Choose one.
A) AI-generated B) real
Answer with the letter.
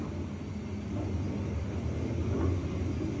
B